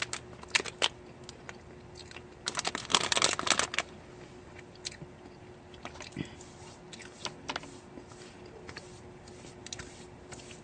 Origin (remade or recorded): recorded